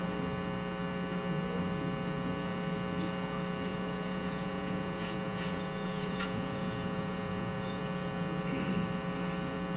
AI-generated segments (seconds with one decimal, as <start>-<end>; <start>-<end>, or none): 3.7-7.8